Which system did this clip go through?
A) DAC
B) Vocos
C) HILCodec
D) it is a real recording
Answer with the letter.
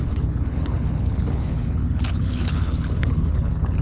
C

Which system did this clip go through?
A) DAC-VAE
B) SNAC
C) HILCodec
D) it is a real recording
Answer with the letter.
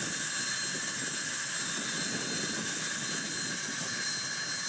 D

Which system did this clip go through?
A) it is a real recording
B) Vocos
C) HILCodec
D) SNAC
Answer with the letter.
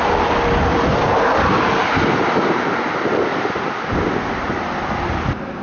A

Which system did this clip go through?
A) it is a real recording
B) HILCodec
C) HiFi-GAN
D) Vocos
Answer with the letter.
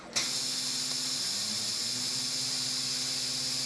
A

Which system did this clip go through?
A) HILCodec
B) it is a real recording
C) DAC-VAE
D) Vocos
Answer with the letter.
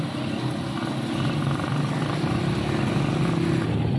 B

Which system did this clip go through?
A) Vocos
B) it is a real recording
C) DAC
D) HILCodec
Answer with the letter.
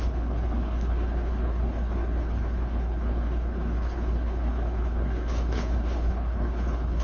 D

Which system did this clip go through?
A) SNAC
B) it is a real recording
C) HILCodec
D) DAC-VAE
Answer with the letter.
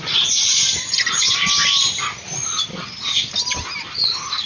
B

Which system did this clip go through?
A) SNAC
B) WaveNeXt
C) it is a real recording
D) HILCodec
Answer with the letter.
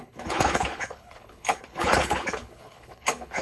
D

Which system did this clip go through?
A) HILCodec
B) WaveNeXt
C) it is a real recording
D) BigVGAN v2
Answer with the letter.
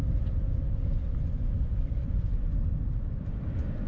C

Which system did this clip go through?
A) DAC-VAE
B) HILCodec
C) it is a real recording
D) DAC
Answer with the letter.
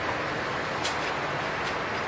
C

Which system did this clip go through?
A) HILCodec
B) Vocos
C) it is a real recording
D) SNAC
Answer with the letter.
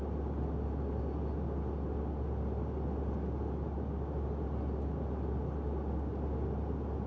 C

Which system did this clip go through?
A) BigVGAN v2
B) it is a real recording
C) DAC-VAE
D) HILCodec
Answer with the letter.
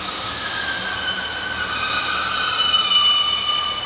B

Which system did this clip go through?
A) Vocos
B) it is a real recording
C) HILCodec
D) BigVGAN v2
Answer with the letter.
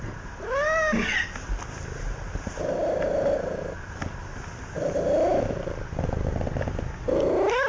B